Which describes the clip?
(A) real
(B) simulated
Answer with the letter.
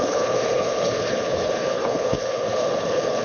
B